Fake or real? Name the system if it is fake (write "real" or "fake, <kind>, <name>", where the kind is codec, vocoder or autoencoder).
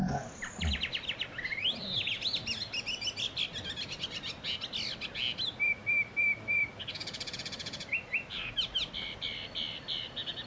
real